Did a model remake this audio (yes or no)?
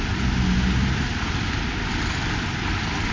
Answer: no